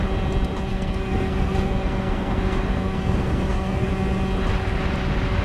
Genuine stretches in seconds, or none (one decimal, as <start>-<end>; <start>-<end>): 0.0-0.7; 3.9-5.4